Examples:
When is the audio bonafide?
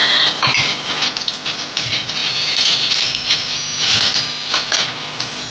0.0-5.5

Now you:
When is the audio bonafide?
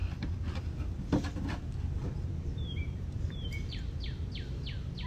0.0-2.0; 3.8-5.1